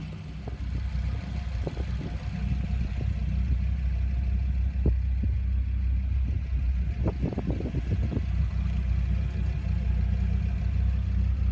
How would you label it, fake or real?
real